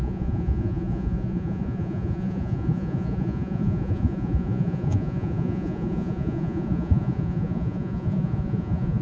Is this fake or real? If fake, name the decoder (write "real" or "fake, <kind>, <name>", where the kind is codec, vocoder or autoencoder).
fake, vocoder, Vocos